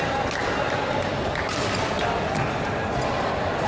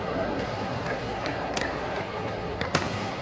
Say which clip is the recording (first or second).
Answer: first